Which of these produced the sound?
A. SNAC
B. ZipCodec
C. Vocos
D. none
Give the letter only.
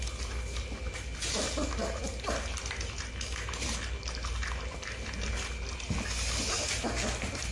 D